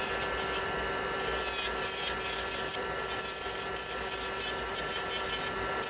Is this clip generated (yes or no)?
no